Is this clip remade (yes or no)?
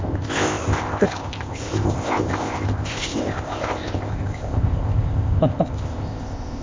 yes